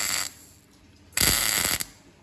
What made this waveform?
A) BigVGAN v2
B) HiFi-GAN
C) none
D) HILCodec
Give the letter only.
C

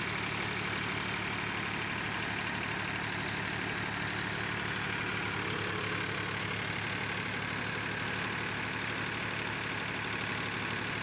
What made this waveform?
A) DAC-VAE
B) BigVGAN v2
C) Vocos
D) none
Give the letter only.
D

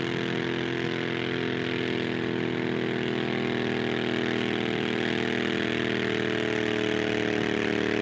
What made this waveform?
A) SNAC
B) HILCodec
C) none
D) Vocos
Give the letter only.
C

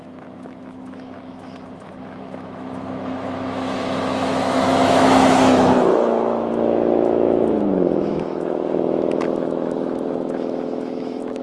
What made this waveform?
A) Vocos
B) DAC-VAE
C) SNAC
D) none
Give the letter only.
B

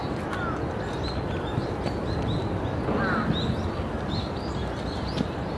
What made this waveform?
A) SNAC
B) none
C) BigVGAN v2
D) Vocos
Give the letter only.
B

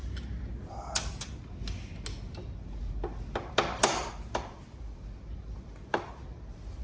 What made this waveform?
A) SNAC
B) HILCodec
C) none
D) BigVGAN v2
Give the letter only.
C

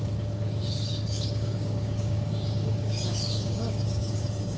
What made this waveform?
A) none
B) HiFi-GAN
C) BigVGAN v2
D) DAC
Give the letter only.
D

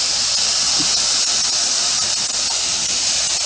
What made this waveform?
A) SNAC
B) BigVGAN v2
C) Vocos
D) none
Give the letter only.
D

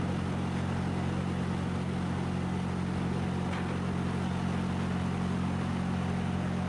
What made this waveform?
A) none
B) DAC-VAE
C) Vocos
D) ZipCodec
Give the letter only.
A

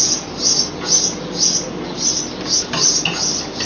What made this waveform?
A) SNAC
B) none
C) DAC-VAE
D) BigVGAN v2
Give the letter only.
B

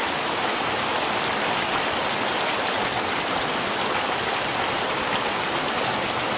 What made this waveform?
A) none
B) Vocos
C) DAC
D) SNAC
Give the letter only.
A